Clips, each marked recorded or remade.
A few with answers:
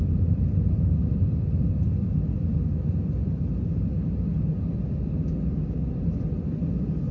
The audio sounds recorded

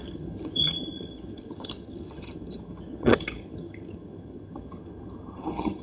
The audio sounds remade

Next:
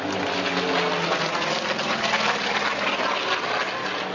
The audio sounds recorded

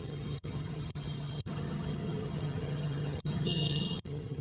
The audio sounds remade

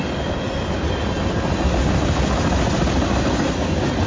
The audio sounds recorded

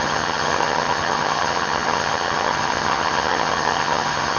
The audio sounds remade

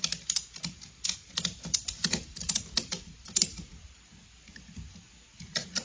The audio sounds recorded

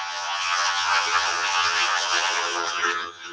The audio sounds remade